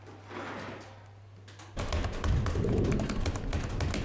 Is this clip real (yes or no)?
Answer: yes